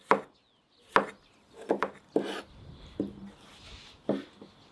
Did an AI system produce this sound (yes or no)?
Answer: no